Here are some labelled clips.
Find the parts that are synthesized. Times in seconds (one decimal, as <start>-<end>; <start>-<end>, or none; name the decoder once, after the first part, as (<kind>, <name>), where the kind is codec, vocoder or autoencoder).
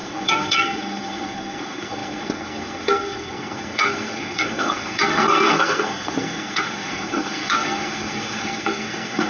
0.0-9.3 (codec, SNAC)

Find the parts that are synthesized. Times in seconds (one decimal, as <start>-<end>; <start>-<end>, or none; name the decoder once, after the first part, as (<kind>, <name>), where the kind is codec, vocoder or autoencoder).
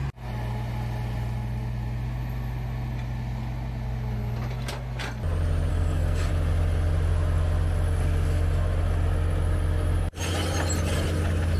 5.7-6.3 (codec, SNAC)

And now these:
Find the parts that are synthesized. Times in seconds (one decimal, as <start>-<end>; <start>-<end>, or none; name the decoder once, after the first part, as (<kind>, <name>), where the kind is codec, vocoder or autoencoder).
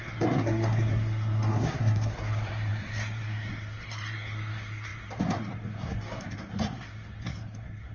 0.0-7.9 (codec, SNAC)